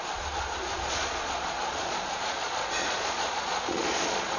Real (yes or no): no